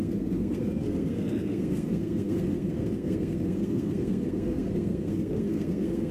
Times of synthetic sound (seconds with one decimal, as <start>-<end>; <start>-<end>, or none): 0.0-6.1